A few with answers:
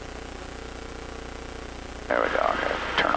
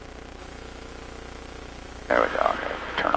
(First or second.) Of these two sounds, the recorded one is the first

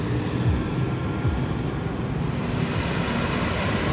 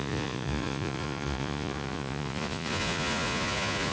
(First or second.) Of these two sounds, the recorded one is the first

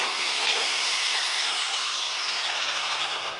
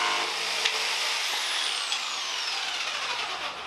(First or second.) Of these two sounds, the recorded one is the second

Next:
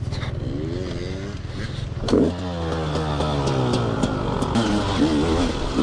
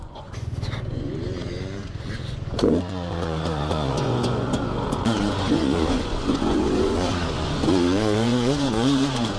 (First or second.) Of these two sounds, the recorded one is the first